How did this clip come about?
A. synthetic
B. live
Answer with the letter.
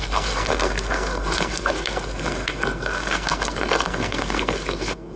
A